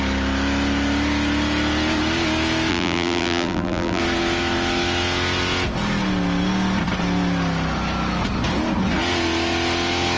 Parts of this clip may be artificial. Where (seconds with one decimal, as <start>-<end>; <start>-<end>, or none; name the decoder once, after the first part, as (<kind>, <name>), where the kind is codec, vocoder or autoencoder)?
2.7-4.0 (vocoder, BigVGAN v2)